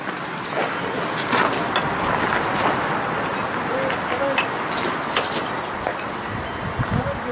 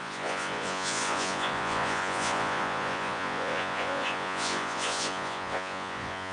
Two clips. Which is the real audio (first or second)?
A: first